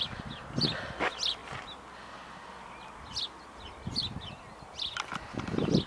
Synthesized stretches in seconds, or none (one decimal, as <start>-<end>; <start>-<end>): none